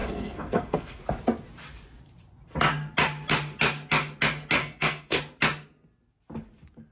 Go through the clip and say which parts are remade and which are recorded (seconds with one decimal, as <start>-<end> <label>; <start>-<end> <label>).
0.0-1.0 remade; 1.0-4.6 recorded; 4.6-5.2 remade; 5.2-6.9 recorded

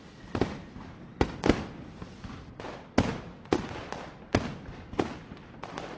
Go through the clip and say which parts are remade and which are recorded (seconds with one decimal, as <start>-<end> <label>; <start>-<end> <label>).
0.0-6.0 recorded

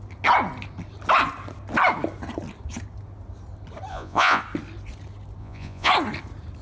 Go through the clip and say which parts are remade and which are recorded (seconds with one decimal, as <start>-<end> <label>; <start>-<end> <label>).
0.0-3.9 recorded; 3.9-4.4 remade; 4.4-5.4 recorded; 5.4-5.9 remade; 5.9-6.6 recorded

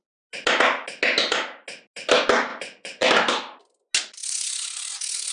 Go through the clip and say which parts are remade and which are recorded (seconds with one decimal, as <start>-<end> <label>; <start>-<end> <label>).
0.0-2.5 recorded; 2.5-3.1 remade; 3.1-4.2 recorded; 4.2-5.3 remade